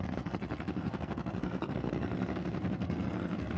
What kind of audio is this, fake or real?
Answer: fake